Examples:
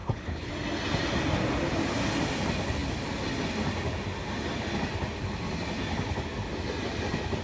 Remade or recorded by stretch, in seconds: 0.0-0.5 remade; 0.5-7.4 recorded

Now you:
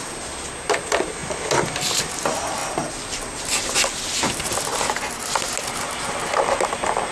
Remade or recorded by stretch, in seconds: 0.0-7.1 recorded

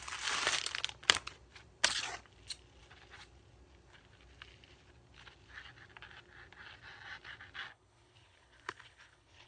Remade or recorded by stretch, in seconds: 0.0-7.7 recorded; 7.7-9.5 remade

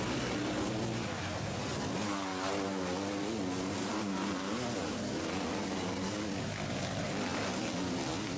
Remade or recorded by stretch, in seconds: 0.0-8.4 recorded

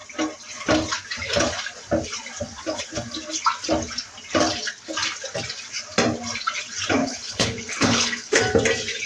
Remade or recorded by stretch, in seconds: 0.0-7.0 recorded; 7.0-8.4 remade; 8.4-9.1 recorded

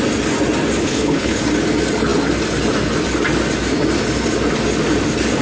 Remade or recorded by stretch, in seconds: 0.0-0.8 recorded; 0.8-1.4 remade; 1.4-5.4 recorded

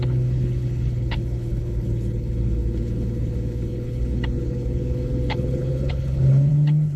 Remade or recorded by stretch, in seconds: 0.0-7.0 remade